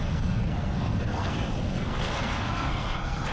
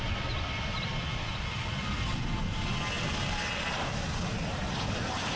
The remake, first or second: first